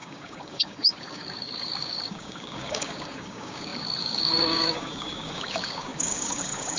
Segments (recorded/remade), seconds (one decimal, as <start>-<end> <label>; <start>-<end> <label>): 0.0-6.8 remade